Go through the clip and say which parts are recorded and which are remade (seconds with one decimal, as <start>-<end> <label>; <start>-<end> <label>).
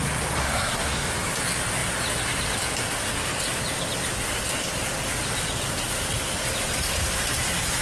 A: 0.0-0.4 recorded; 0.4-1.1 remade; 1.1-7.8 recorded